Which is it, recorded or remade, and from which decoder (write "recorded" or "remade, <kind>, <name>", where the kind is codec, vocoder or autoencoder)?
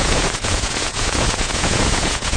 remade, vocoder, Vocos